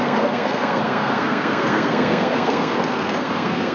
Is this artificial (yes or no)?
yes